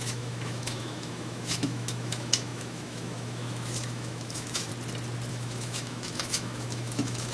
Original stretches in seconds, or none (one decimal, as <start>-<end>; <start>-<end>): 4.7-5.3